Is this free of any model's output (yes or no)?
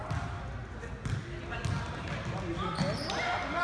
yes